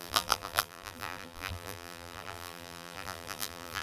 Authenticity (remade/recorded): remade